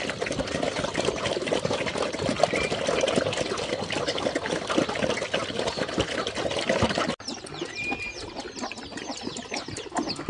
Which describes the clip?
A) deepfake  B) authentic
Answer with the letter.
B